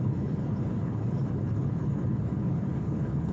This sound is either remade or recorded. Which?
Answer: remade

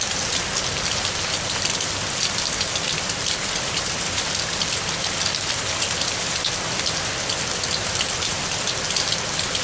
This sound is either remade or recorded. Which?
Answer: recorded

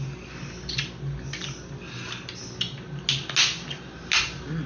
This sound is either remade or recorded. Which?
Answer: recorded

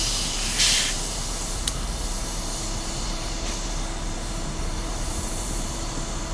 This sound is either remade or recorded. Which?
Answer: remade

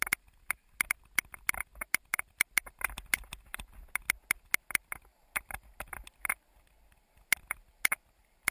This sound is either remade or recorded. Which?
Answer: recorded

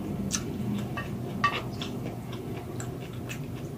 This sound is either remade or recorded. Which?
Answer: recorded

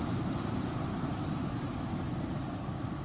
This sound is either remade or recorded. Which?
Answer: remade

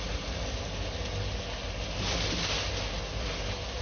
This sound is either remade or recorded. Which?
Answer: recorded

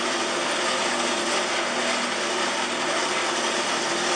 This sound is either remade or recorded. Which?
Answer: recorded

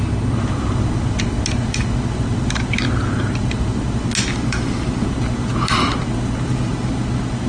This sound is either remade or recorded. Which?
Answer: recorded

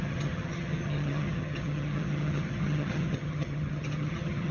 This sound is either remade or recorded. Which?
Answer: remade